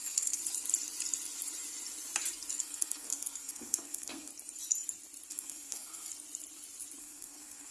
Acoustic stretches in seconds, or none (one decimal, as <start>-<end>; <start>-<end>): 0.4-2.6; 4.3-5.3; 6.1-7.0